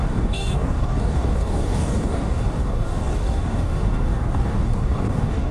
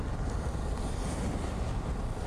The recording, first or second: second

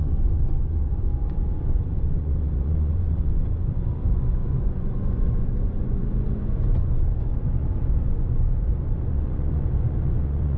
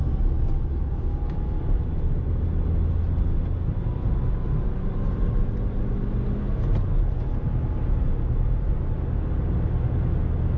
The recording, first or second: second